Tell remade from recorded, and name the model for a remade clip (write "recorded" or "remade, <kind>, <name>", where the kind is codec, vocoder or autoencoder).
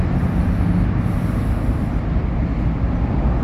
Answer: recorded